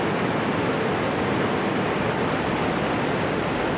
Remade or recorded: recorded